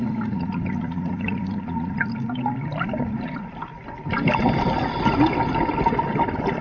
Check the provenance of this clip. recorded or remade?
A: recorded